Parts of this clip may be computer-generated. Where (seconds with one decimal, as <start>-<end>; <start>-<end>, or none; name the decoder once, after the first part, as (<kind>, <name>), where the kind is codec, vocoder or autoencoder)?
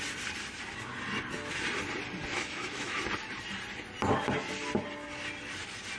2.3-3.0 (autoencoder, DAC-VAE)